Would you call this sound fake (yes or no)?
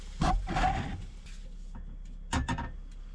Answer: no